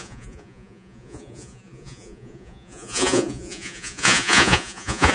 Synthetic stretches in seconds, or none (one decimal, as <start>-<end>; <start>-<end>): 0.0-5.1